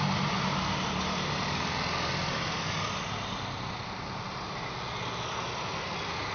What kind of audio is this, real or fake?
real